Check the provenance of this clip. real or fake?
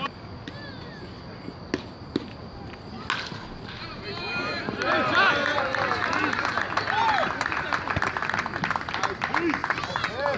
real